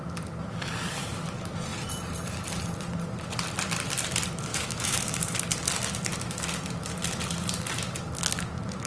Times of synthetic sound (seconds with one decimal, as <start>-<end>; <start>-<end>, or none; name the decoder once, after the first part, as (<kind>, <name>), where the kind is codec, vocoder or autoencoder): 4.5-5.4 (autoencoder, DAC-VAE)